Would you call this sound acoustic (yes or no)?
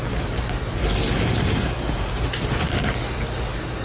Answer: yes